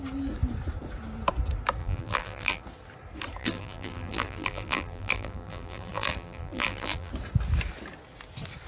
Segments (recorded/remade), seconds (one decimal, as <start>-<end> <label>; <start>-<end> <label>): 0.0-1.8 recorded; 1.8-2.6 remade; 2.6-3.4 recorded; 3.4-7.1 remade; 7.1-8.7 recorded